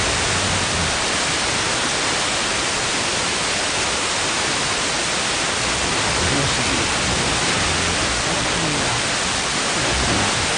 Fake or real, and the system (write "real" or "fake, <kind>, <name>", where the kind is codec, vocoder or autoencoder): real